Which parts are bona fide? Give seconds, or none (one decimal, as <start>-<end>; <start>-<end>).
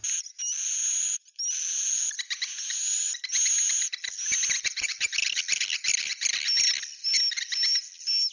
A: 0.0-8.3